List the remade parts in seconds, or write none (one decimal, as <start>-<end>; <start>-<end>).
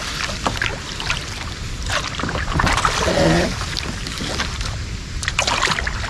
none